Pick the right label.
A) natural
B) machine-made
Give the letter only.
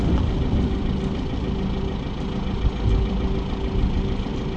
A